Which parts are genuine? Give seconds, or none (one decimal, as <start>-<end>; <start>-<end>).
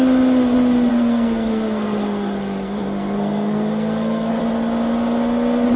0.0-0.9; 4.4-5.8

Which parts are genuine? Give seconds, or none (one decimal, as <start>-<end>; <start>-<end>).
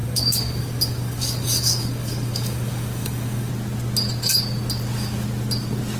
3.5-6.0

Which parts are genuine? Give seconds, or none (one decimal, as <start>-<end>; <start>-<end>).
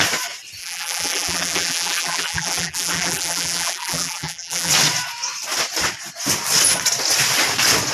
0.0-0.6; 4.7-7.9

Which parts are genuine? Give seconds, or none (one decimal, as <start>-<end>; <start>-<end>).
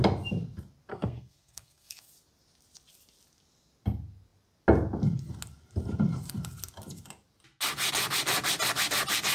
0.0-0.9; 2.1-9.3